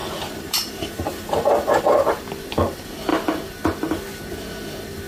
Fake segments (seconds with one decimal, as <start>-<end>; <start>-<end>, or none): 0.0-1.8